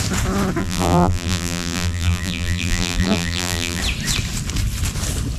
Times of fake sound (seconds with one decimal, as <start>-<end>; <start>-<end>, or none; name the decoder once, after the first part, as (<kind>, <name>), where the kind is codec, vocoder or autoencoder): 0.6-3.8 (vocoder, BigVGAN v2)